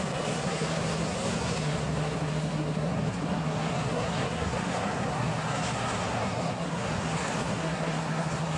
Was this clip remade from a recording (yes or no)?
yes